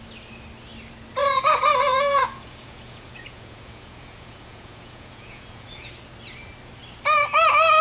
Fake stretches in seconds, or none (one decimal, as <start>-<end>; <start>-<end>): 1.2-5.9